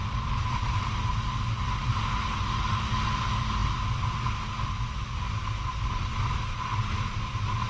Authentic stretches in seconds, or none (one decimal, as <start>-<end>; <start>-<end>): 0.0-7.7